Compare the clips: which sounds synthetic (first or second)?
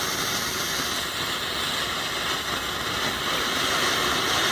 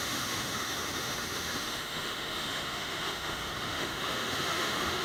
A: second